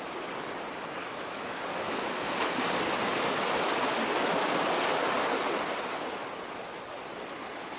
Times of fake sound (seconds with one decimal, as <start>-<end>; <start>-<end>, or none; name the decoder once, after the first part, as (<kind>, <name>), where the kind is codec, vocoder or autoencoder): 1.0-1.6 (autoencoder, DAC-VAE)